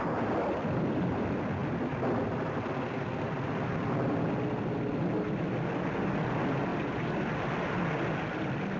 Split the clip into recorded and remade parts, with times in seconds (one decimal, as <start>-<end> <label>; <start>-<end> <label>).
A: 0.0-8.8 recorded

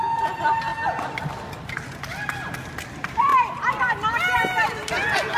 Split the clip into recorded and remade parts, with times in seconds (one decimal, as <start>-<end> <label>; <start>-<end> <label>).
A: 0.0-5.4 recorded

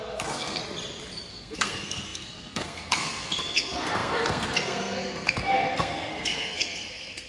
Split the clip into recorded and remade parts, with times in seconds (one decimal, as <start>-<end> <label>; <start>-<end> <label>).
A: 0.0-0.6 remade; 0.6-1.3 recorded; 1.3-7.3 remade